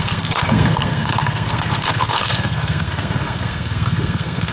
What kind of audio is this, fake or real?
fake